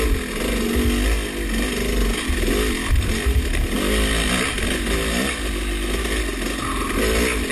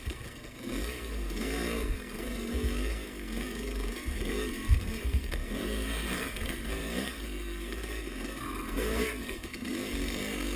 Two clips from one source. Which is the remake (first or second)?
second